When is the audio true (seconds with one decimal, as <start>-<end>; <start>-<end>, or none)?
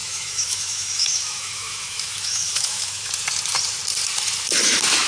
3.1-5.1